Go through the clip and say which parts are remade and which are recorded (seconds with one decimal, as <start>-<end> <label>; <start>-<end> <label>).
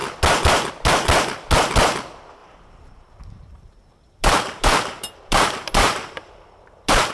0.0-2.4 recorded; 2.4-7.1 remade